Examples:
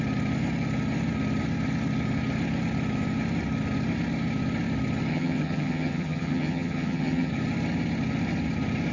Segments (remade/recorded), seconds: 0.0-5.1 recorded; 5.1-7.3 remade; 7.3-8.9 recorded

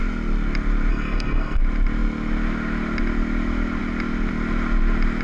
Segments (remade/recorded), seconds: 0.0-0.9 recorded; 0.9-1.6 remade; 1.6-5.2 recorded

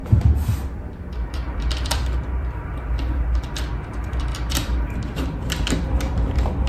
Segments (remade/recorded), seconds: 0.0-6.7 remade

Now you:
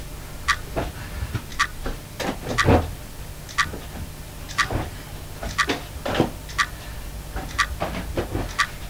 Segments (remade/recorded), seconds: 0.0-1.5 recorded; 1.5-2.4 remade; 2.4-8.9 recorded

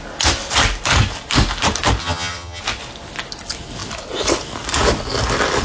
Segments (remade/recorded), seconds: 0.0-2.0 recorded; 2.0-2.6 remade; 2.6-5.6 recorded

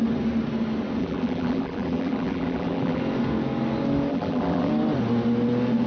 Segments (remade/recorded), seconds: 0.0-1.0 recorded; 1.0-3.0 remade; 3.0-4.1 recorded; 4.1-4.7 remade; 4.7-5.9 recorded

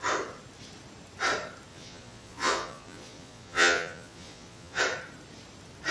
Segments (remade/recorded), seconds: 0.0-1.7 recorded; 1.7-4.8 remade; 4.8-5.9 recorded

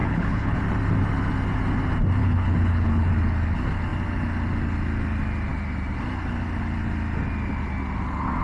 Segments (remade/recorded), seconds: 0.0-0.6 remade; 0.6-2.2 recorded; 2.2-3.1 remade; 3.1-8.4 recorded